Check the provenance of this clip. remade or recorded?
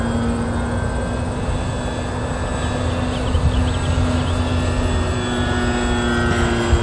recorded